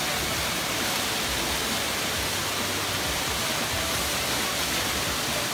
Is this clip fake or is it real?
real